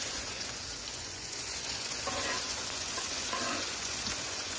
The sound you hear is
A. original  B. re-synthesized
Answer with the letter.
B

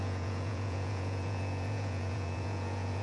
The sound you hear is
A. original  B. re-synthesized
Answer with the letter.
B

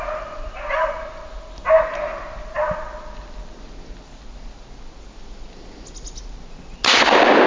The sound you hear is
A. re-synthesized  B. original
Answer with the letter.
B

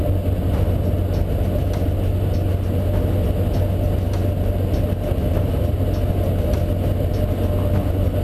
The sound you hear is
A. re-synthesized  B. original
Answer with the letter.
B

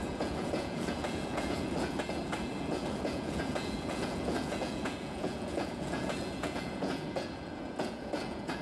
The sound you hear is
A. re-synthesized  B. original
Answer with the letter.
A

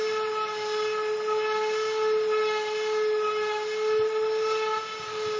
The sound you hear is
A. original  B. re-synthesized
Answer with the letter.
A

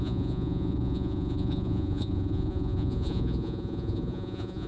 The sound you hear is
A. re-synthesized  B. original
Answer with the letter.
A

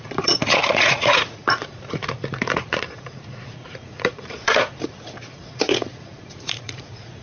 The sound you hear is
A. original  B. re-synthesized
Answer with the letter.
B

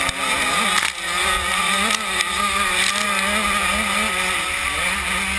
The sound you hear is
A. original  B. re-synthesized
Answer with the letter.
A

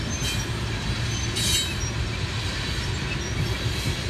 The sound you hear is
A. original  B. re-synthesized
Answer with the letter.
A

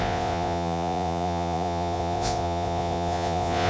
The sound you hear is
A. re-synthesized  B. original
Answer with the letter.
A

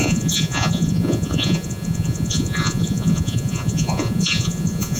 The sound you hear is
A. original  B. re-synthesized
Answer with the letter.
B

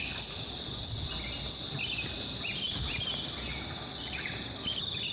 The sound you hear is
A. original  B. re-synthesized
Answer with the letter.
A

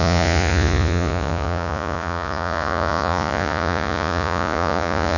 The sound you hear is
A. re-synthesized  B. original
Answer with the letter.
A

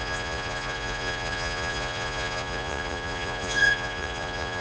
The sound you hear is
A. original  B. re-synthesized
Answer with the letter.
B